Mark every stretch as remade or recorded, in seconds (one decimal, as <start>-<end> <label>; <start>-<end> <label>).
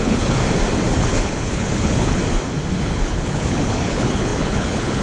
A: 0.0-0.4 remade; 0.4-1.0 recorded; 1.0-2.2 remade; 2.2-2.8 recorded; 2.8-5.0 remade